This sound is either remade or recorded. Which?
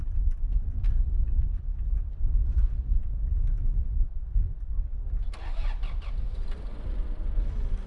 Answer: recorded